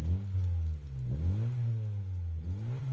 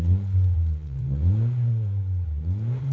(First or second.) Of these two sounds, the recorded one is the first